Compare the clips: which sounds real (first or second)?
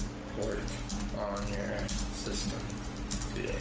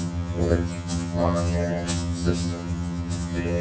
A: first